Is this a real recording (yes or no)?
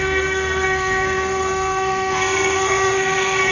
no